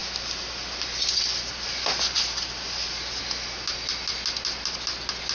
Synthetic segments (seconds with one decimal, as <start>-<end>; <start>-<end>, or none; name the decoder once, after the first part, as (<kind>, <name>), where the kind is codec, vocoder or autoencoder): none